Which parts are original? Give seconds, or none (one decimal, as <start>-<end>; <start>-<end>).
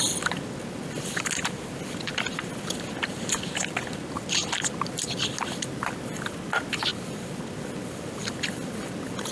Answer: 0.0-9.3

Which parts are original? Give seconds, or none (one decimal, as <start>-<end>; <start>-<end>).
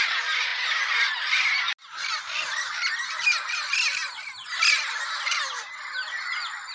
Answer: 0.0-6.7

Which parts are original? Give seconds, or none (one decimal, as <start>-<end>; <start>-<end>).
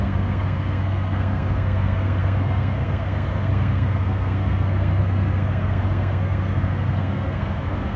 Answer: none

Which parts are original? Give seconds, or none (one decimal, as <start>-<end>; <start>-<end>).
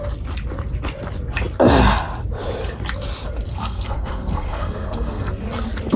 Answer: 0.0-3.5; 5.3-6.0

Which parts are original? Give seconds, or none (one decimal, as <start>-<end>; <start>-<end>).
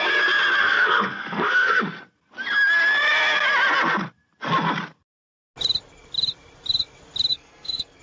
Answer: 0.0-0.6; 1.8-7.3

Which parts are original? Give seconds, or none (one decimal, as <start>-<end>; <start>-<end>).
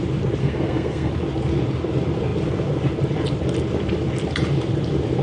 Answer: 0.0-0.4; 1.1-5.2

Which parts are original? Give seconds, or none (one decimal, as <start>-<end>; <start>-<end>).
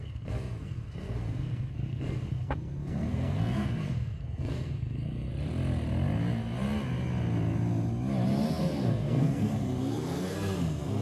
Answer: 5.3-8.6